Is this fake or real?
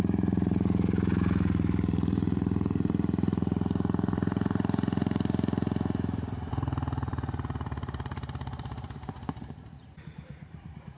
fake